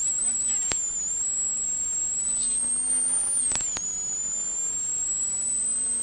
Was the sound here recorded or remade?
remade